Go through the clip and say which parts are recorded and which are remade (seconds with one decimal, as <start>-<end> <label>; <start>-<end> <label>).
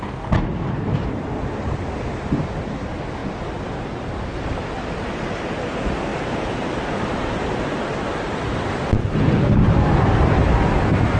0.0-6.1 recorded; 6.1-8.6 remade; 8.6-11.2 recorded